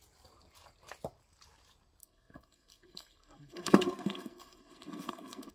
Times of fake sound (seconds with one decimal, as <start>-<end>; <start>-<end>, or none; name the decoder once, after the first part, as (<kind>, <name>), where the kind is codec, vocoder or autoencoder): 2.0-5.5 (codec, SNAC)